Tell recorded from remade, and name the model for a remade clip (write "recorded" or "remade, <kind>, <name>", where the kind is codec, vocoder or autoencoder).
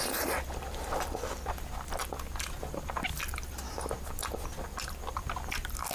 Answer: recorded